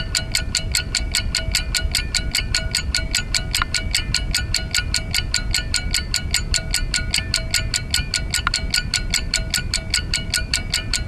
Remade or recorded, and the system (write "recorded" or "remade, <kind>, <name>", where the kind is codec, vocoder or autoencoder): recorded